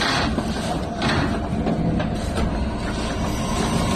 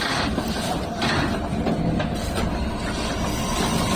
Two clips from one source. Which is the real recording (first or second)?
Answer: first